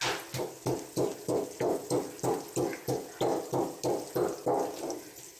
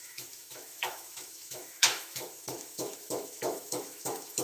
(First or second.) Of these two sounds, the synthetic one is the second